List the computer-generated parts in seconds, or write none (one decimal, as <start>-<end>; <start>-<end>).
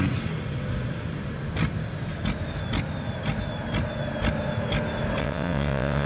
5.2-6.1